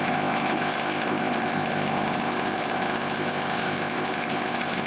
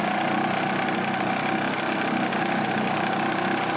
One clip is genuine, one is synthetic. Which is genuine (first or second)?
second